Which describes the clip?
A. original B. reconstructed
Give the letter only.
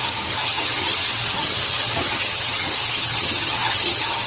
B